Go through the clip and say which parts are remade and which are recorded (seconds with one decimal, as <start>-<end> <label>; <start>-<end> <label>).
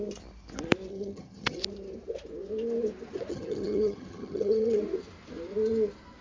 0.0-0.9 recorded; 0.9-1.6 remade; 1.6-3.3 recorded; 3.3-4.8 remade; 4.8-6.2 recorded